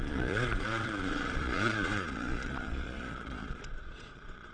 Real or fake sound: fake